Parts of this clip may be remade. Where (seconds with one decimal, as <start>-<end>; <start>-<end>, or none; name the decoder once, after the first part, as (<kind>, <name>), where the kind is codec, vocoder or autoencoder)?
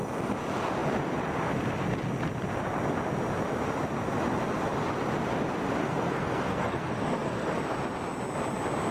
5.8-7.6 (codec, SNAC)